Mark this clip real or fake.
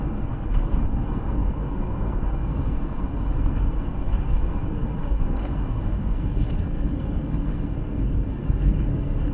fake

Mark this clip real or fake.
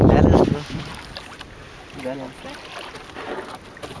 real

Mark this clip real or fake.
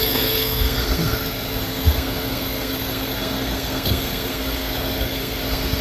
fake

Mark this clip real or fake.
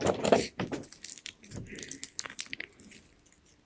real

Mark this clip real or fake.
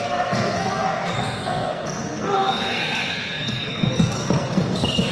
fake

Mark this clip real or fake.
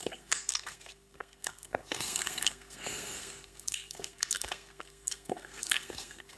fake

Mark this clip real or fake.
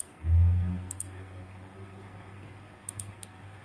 fake